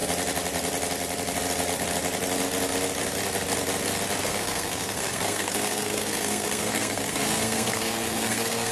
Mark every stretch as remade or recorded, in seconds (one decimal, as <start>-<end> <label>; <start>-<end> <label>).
0.0-4.2 recorded; 4.2-8.7 remade